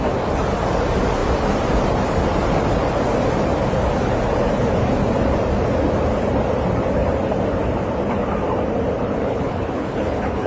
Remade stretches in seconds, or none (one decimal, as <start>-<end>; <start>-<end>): 9.2-10.5

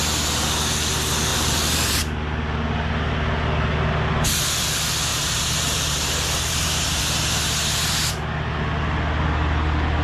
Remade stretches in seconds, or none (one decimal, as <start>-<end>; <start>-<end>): 1.3-2.0; 5.1-7.0